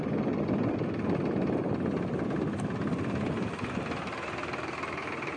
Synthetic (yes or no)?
no